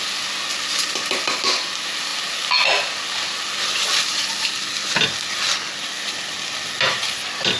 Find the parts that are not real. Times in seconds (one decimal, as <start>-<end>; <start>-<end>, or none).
none